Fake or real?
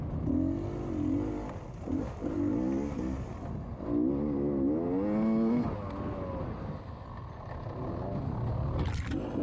real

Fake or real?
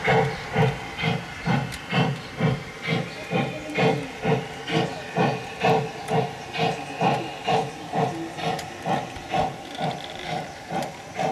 real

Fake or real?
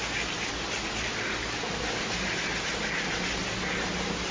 real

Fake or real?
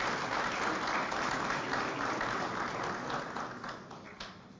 real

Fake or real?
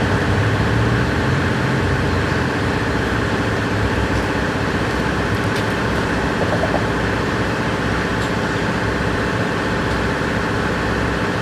fake